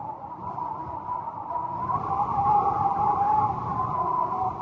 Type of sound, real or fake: real